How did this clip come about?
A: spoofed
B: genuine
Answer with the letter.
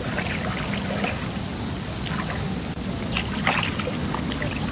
B